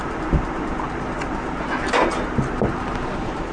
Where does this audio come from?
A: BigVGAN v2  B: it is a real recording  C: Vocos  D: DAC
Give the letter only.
B